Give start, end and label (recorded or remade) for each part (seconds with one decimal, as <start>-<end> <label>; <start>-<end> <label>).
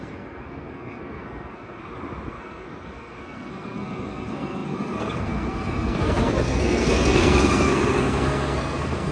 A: 0.0-1.8 remade; 1.8-2.3 recorded; 2.3-9.1 remade